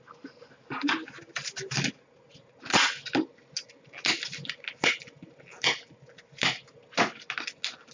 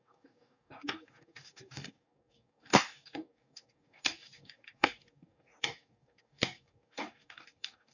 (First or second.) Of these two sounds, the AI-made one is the second